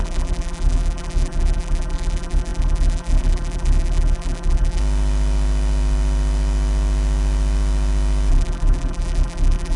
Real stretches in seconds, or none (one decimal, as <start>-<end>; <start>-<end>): 4.8-8.3

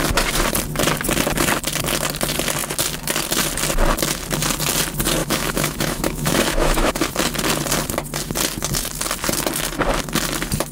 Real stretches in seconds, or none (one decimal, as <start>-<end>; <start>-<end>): 0.0-5.2; 6.9-10.7

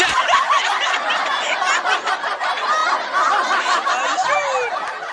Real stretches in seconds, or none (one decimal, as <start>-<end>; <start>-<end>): 0.0-5.1

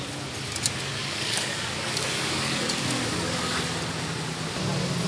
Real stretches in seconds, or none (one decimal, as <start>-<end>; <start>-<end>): 0.0-0.9; 3.6-5.1

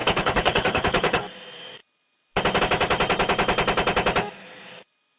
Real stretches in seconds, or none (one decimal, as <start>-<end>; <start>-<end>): 1.3-5.2